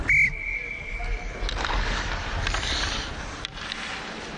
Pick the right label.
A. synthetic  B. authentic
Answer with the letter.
B